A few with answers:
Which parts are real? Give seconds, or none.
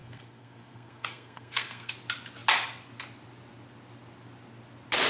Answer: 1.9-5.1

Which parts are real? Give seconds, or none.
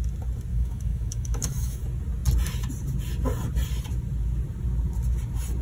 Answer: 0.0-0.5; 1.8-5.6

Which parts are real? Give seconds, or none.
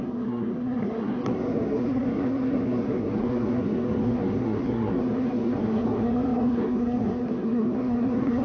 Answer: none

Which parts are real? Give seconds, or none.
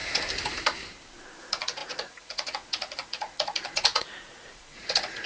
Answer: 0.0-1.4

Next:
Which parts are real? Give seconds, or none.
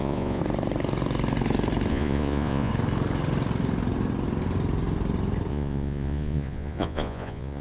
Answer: 0.4-1.9; 2.7-5.5